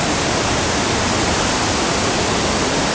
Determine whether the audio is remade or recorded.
recorded